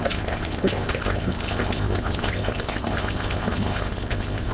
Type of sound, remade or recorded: remade